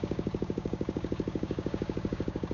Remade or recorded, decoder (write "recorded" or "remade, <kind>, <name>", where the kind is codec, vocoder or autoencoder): remade, codec, DAC